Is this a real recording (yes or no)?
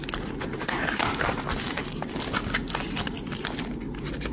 yes